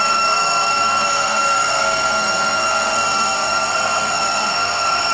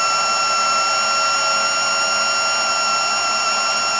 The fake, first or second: first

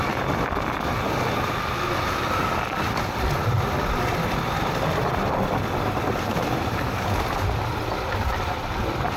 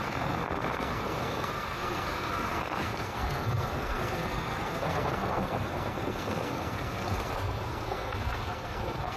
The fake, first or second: second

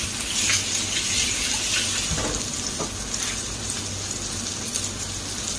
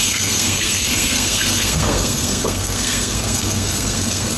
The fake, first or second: second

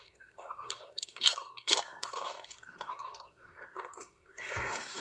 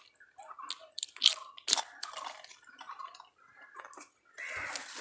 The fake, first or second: first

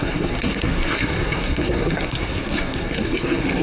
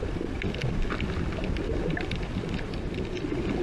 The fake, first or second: first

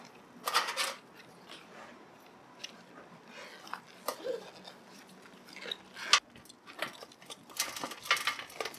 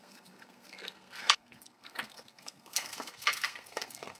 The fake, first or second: second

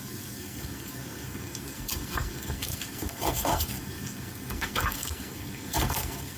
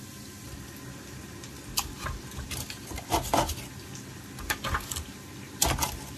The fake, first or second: first